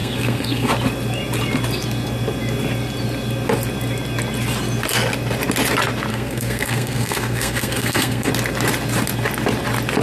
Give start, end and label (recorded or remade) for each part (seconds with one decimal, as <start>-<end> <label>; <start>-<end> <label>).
0.0-0.7 remade; 0.7-6.1 recorded; 6.1-8.3 remade; 8.3-10.0 recorded